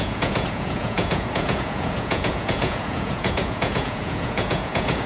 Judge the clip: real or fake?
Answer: fake